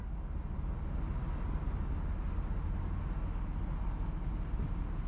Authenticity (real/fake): real